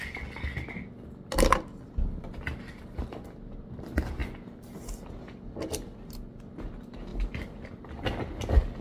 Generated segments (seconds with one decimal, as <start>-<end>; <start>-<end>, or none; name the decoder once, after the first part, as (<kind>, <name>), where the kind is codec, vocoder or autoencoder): none

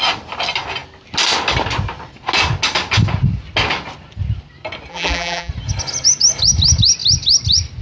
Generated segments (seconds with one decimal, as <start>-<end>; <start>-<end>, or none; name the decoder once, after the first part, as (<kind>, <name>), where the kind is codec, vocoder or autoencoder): 4.9-5.5 (vocoder, BigVGAN v2)

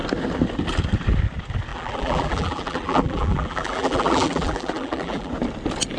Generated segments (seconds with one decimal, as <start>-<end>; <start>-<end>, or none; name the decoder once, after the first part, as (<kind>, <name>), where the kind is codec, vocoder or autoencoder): 1.7-5.3 (vocoder, BigVGAN v2)

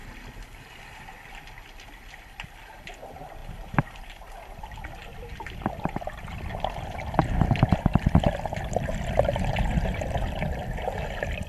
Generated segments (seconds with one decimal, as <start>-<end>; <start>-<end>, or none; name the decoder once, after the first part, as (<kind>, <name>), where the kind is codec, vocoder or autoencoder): none